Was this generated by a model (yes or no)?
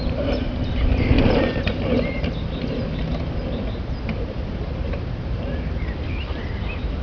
no